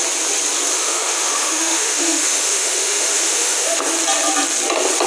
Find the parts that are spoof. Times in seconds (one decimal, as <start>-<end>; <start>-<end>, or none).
0.7-3.8